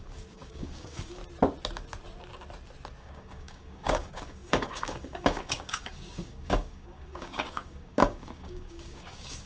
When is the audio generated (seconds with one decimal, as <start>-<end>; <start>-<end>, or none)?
0.0-1.2; 3.0-9.5